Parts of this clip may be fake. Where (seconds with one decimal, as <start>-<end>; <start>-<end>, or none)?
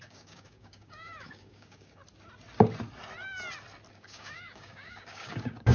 0.0-2.0; 3.9-5.7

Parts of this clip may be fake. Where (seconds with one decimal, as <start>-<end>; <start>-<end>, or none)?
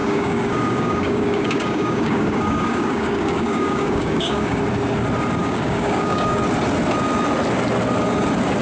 0.0-4.6; 5.4-6.4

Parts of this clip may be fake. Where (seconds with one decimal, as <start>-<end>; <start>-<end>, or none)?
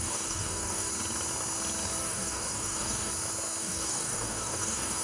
0.0-0.9; 2.0-3.1; 3.6-5.0